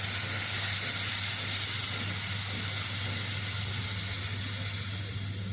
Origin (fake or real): real